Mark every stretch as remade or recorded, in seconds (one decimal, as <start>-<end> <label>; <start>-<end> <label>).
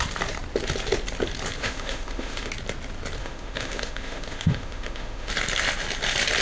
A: 0.0-1.6 recorded; 1.6-2.5 remade; 2.5-3.2 recorded; 3.2-5.3 remade; 5.3-6.4 recorded